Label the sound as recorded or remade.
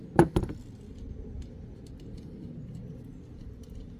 recorded